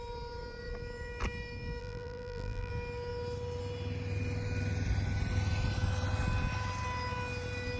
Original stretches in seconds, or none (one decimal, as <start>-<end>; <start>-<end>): 0.0-1.8; 2.7-7.8